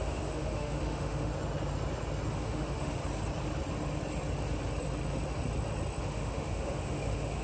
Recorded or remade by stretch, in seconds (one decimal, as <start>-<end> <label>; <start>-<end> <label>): 0.0-1.3 remade; 1.3-2.3 recorded; 2.3-3.0 remade; 3.0-6.0 recorded; 6.0-7.4 remade